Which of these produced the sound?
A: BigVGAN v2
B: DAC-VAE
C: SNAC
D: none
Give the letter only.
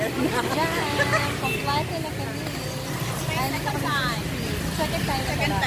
D